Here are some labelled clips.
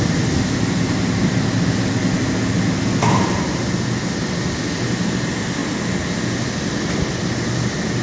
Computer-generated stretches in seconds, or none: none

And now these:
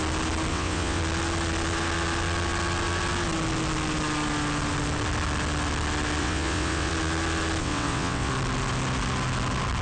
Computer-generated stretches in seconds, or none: 0.5-1.0 (vocoder, WaveNeXt); 6.2-6.9; 7.6-8.3